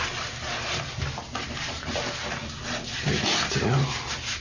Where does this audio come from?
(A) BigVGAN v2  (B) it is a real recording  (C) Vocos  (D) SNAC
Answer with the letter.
B